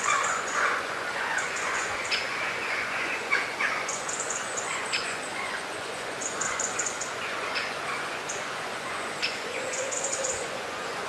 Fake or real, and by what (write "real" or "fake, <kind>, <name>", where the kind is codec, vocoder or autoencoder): fake, vocoder, Vocos